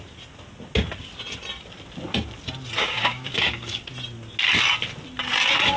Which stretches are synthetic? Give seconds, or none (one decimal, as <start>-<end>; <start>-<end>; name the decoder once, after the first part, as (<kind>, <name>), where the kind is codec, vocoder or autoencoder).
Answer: 2.8-3.8 (codec, DAC)